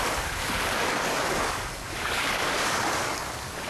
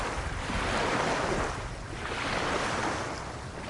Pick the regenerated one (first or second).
first